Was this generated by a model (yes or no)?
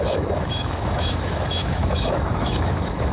yes